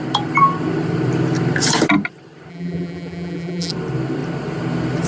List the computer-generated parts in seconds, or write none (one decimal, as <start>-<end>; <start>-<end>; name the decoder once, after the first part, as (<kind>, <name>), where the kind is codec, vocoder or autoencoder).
2.5-3.7 (vocoder, BigVGAN v2)